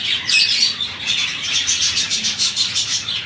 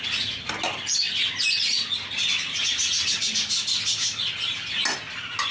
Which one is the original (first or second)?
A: second